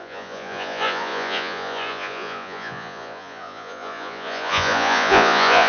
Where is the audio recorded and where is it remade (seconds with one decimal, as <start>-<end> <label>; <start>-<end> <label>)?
0.0-5.7 remade

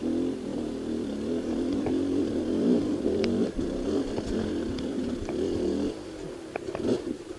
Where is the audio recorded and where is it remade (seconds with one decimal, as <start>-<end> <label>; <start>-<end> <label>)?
0.0-7.4 recorded

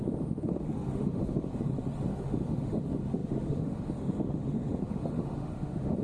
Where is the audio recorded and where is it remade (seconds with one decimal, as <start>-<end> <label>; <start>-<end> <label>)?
0.0-1.5 remade; 1.5-2.1 recorded; 2.1-6.0 remade

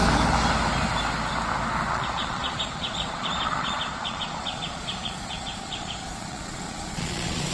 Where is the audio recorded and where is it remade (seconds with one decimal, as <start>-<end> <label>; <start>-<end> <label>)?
0.0-1.9 recorded; 1.9-7.5 remade